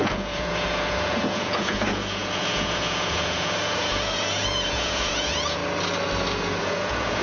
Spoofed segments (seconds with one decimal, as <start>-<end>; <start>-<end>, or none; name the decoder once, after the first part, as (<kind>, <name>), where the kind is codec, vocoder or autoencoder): 0.0-5.6 (vocoder, Vocos); 6.6-7.2

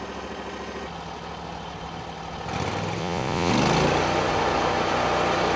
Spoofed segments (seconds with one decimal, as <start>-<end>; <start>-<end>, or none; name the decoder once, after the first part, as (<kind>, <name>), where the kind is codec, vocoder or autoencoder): 3.0-3.5 (vocoder, Vocos)

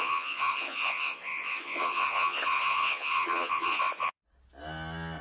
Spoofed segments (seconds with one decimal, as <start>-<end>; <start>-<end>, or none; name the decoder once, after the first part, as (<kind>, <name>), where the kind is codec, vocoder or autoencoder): 0.0-4.2 (vocoder, Vocos)

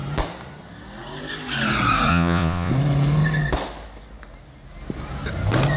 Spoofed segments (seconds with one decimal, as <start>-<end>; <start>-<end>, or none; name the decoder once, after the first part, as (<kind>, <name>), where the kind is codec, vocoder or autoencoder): 2.1-2.7 (vocoder, Vocos)